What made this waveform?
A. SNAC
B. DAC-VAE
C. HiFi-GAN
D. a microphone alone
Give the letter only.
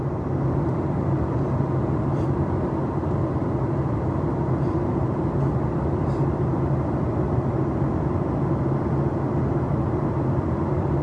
D